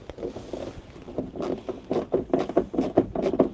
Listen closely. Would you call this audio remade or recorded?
recorded